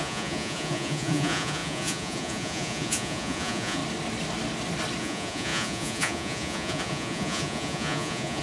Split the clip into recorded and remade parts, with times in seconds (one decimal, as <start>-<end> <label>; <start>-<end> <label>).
0.0-3.8 remade; 3.8-5.0 recorded; 5.0-8.4 remade